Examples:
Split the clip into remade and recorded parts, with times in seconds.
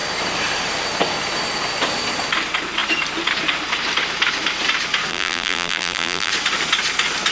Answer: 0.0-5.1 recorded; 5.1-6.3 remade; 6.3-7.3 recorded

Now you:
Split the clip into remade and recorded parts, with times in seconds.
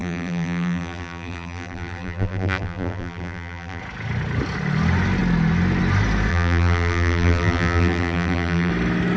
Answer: 0.0-3.8 remade; 3.8-6.3 recorded; 6.3-8.7 remade; 8.7-9.2 recorded